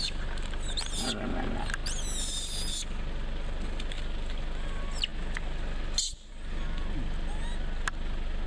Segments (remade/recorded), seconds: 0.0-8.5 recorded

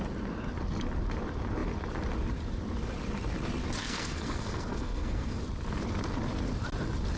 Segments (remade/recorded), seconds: 0.0-3.8 recorded; 3.8-5.4 remade; 5.4-7.2 recorded

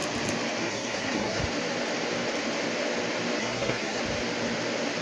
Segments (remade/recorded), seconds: 0.0-0.6 recorded; 0.6-1.4 remade; 1.4-3.4 recorded; 3.4-4.0 remade; 4.0-5.0 recorded

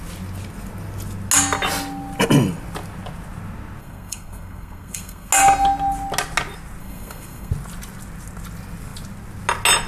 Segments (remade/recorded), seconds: 0.0-3.8 recorded; 3.8-5.3 remade; 5.3-6.8 recorded; 6.8-7.5 remade; 7.5-9.9 recorded

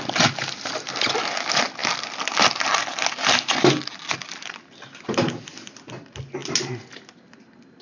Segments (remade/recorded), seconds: 0.0-7.8 recorded

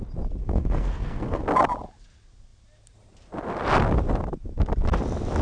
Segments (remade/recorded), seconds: 0.0-0.4 recorded; 0.4-1.4 remade; 1.4-5.4 recorded

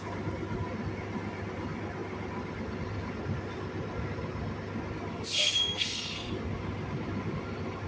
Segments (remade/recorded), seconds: 0.0-5.4 recorded; 5.4-6.3 remade; 6.3-7.9 recorded

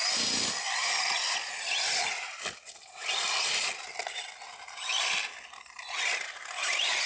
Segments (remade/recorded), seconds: 0.0-7.1 recorded